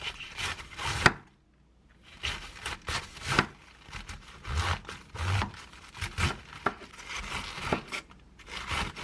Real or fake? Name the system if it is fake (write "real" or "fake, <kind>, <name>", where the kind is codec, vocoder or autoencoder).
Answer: real